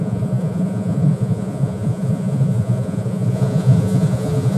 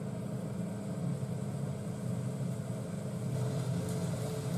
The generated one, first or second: first